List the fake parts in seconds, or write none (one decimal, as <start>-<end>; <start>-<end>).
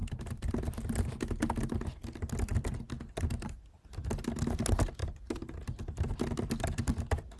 0.0-0.5; 5.0-5.6